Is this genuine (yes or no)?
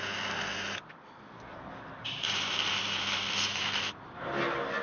yes